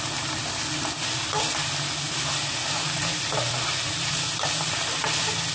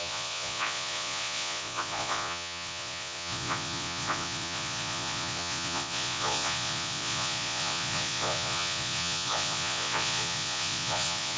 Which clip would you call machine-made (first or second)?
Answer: second